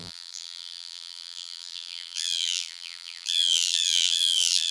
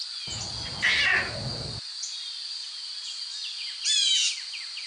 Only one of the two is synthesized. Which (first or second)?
first